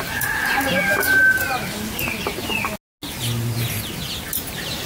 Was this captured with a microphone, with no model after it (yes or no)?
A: yes